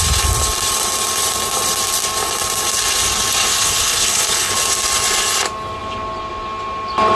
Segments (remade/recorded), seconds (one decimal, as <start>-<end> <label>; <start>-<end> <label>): 0.0-3.5 recorded; 3.5-4.5 remade; 4.5-7.1 recorded